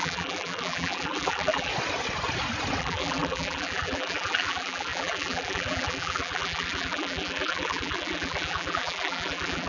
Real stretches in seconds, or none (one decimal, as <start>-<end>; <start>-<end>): 1.7-2.8